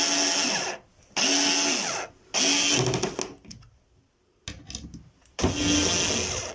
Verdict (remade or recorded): recorded